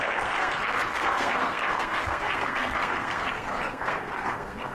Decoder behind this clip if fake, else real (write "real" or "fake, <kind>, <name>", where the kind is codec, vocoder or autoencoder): fake, codec, SNAC